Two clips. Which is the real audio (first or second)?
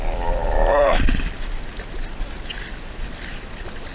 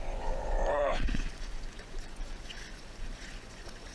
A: first